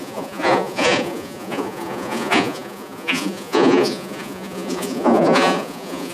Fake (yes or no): yes